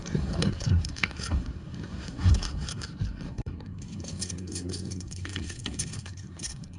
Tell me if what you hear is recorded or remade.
remade